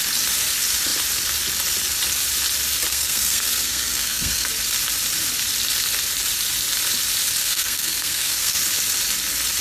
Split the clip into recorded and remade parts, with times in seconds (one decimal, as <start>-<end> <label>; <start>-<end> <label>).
0.0-2.9 recorded; 2.9-4.5 remade; 4.5-7.4 recorded; 7.4-8.6 remade; 8.6-9.6 recorded

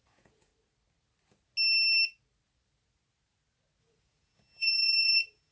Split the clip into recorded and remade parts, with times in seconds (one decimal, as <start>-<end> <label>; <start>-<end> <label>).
0.0-0.5 remade; 0.5-3.8 recorded; 3.8-5.5 remade

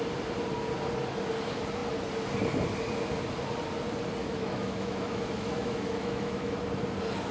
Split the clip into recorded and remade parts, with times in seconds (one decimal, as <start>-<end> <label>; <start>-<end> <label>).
0.0-4.2 recorded; 4.2-6.6 remade; 6.6-7.3 recorded

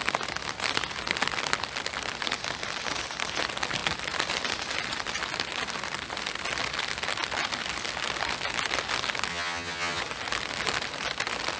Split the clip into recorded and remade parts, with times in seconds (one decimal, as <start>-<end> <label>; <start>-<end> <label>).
0.0-9.3 recorded; 9.3-10.0 remade; 10.0-11.6 recorded

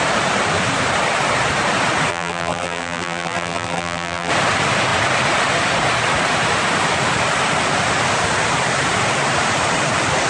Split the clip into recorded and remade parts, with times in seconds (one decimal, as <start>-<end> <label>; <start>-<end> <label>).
0.0-2.1 recorded; 2.1-4.3 remade; 4.3-10.3 recorded

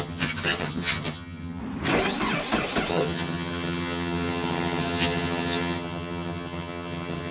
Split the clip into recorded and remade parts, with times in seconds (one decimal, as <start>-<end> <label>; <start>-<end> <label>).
0.0-1.6 remade; 1.6-2.9 recorded; 2.9-7.3 remade

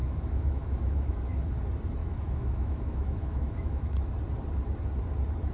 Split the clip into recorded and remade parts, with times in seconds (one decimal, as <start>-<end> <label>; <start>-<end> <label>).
0.0-1.4 remade; 1.4-2.0 recorded; 2.0-4.1 remade; 4.1-5.5 recorded